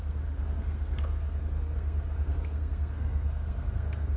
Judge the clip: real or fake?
fake